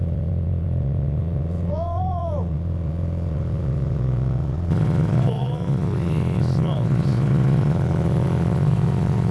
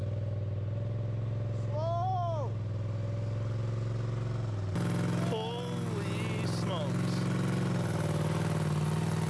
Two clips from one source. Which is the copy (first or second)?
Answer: first